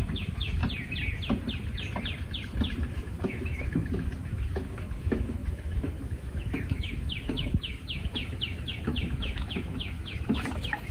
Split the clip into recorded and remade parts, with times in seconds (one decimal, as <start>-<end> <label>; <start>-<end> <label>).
0.0-0.6 remade; 0.6-2.9 recorded; 2.9-10.9 remade